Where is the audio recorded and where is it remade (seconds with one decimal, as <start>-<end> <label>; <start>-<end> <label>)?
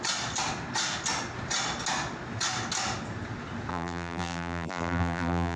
0.0-3.7 recorded; 3.7-5.6 remade